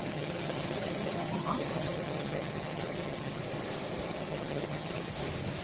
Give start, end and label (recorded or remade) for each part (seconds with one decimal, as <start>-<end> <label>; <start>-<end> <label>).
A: 0.0-3.4 remade; 3.4-4.1 recorded; 4.1-5.1 remade; 5.1-5.6 recorded